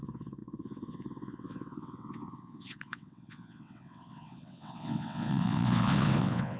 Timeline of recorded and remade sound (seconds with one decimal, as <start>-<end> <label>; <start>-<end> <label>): 0.0-6.6 remade